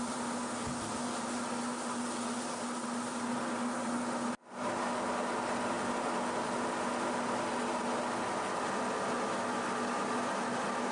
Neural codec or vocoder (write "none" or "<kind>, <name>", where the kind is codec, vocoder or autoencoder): none